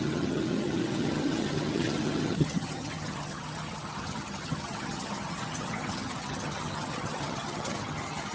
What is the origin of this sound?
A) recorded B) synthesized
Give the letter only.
B